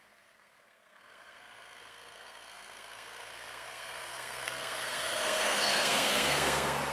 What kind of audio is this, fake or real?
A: fake